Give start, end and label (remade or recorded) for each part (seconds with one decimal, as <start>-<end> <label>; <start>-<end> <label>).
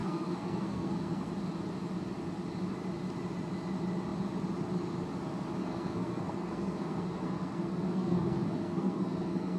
0.0-1.3 remade; 1.3-5.6 recorded; 5.6-9.6 remade